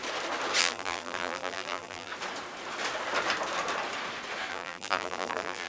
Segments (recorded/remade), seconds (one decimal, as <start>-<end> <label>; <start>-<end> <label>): 0.0-0.6 recorded; 0.6-2.1 remade; 2.1-4.5 recorded; 4.5-5.7 remade